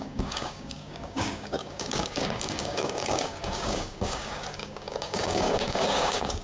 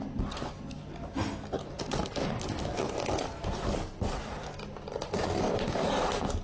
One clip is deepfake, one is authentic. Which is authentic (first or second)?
second